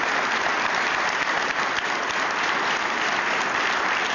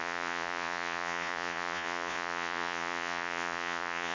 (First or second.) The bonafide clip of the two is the first